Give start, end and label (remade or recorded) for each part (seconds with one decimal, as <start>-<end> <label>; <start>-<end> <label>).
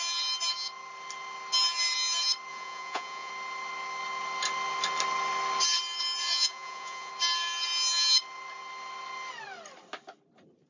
0.0-2.5 recorded; 2.5-3.3 remade; 3.3-6.2 recorded; 6.2-7.1 remade; 7.1-10.7 recorded